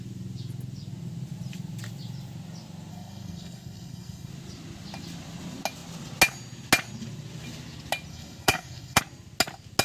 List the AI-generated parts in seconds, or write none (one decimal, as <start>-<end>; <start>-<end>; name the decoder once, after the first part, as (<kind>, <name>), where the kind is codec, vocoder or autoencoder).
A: 2.9-4.3 (codec, SNAC); 8.1-9.0

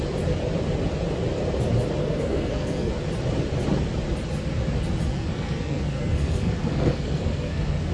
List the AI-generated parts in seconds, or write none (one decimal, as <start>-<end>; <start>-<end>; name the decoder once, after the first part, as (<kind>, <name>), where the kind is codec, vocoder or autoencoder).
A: 2.0-2.9 (codec, SNAC); 5.1-7.9

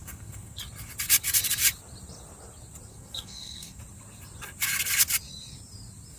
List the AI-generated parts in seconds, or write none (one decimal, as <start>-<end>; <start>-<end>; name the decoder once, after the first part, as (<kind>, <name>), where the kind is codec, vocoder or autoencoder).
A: 0.0-0.6 (codec, SNAC); 2.9-3.8

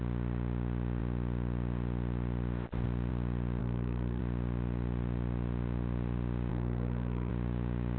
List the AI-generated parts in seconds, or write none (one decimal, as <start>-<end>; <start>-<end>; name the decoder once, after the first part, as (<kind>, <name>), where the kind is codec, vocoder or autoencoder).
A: 3.6-4.2 (codec, SNAC); 6.5-7.3

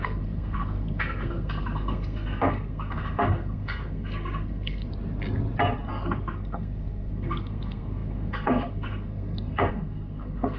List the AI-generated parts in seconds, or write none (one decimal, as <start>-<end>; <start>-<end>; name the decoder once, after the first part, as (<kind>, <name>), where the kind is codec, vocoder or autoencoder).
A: 0.0-4.9 (codec, SNAC); 5.9-10.6